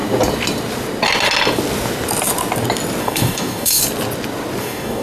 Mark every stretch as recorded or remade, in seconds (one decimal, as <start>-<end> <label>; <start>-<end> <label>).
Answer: 0.0-3.0 recorded; 3.0-3.8 remade; 3.8-4.6 recorded; 4.6-5.0 remade